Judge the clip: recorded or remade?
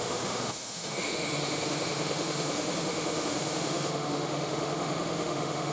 remade